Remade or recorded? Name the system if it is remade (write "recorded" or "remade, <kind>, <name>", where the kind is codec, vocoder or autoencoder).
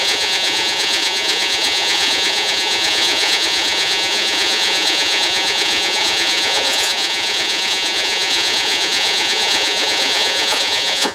remade, vocoder, Vocos